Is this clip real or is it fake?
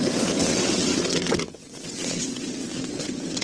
fake